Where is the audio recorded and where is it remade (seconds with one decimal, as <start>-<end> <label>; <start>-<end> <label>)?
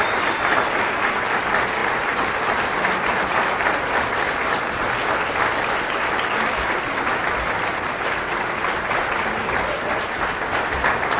0.0-11.2 recorded